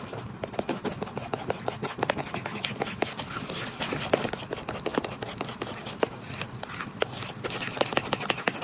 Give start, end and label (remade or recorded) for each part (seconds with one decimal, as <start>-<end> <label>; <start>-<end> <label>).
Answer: 0.0-8.6 recorded